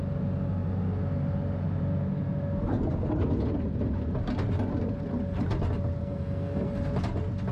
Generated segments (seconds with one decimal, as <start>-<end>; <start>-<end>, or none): 6.0-6.7